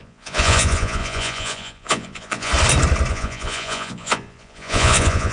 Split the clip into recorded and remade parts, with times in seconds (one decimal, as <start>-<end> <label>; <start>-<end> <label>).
0.0-2.5 remade; 2.5-3.1 recorded; 3.1-5.3 remade